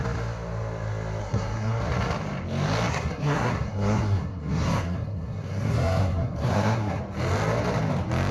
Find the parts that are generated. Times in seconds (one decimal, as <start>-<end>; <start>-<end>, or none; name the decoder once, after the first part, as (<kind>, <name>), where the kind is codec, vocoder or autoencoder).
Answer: 1.2-1.8 (codec, SNAC); 2.9-7.0